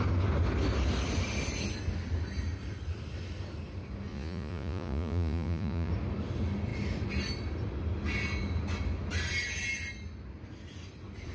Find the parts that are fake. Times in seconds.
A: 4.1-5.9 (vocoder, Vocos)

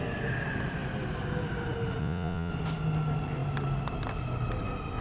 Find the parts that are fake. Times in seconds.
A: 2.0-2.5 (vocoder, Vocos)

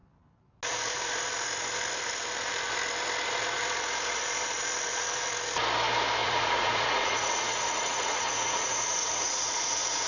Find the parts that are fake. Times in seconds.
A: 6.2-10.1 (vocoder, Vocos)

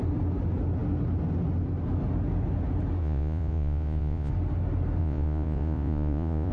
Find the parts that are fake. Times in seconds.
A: 3.0-4.3 (vocoder, Vocos); 5.0-6.5